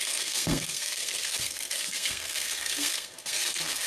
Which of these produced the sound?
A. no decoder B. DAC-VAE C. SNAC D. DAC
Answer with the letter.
C